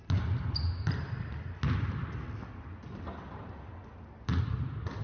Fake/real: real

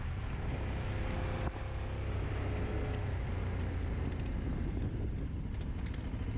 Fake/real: real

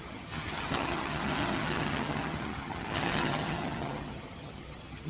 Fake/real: fake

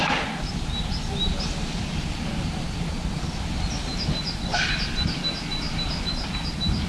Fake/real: real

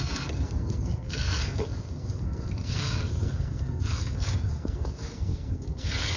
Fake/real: fake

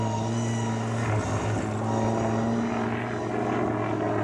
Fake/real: real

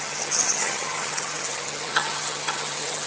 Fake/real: fake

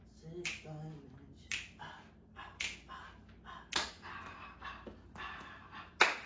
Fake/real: real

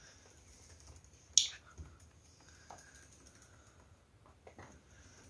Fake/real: real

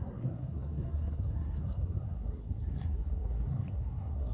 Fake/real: fake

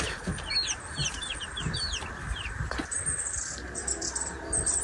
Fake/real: fake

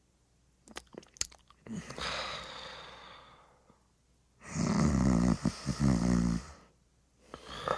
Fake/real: real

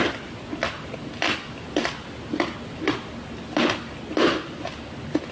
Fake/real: real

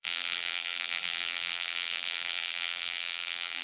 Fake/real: fake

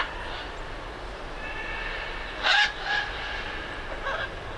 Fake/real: real